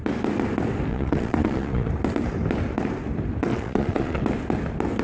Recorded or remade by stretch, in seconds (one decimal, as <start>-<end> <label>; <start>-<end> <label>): 0.0-0.9 recorded; 0.9-1.9 remade; 1.9-3.5 recorded; 3.5-4.2 remade; 4.2-5.0 recorded